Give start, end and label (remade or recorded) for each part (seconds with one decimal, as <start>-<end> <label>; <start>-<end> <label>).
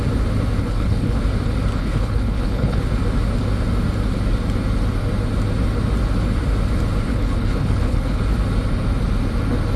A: 0.0-0.6 recorded; 0.6-1.2 remade; 1.2-1.8 recorded; 1.8-2.8 remade; 2.8-7.1 recorded; 7.1-8.2 remade; 8.2-9.8 recorded